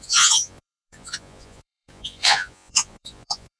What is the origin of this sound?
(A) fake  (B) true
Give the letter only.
A